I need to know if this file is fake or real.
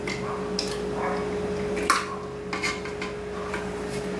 real